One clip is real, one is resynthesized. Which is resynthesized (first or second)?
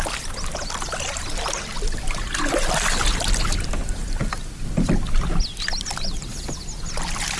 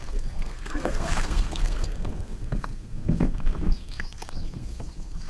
second